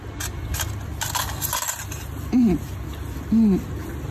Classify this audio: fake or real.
real